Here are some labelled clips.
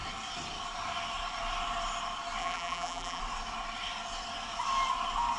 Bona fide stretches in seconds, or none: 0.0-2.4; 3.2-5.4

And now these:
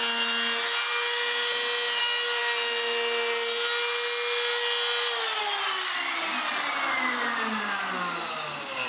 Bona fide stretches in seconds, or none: 0.0-8.9

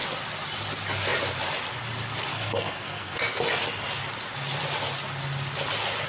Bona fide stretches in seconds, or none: 0.0-2.3; 3.2-6.1

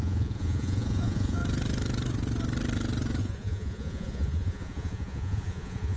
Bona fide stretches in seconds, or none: 1.4-3.2

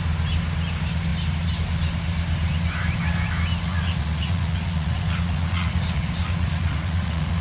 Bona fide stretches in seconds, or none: 0.0-3.7